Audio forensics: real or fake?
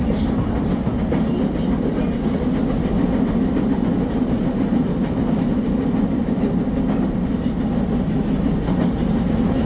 real